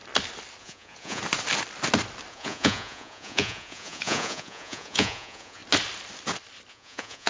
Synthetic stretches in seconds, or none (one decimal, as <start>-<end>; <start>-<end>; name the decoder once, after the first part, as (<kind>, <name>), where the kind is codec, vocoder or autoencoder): 0.6-1.2 (vocoder, Vocos); 2.3-5.6; 6.7-7.3